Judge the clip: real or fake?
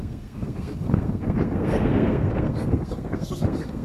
fake